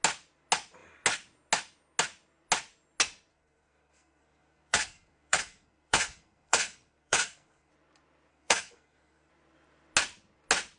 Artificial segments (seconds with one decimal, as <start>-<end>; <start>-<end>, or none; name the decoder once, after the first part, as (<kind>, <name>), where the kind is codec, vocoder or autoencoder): 3.3-7.7 (codec, SNAC); 8.3-9.3